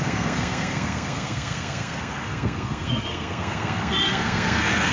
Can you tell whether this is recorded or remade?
remade